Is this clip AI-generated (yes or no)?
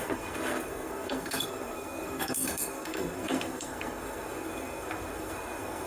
yes